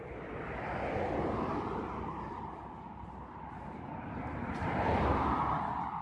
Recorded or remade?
remade